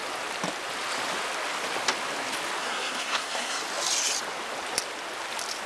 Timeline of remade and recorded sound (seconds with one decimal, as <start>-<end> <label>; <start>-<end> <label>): 0.0-2.6 recorded; 2.6-3.6 remade; 3.6-5.7 recorded